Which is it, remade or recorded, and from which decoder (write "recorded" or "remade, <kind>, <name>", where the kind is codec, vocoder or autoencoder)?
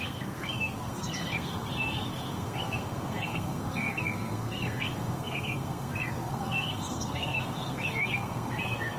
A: remade, codec, SNAC